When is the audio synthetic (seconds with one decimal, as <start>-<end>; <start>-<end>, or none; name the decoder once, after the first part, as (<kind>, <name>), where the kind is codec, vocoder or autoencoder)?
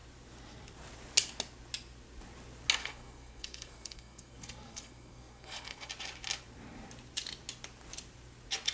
2.8-5.9 (codec, SNAC)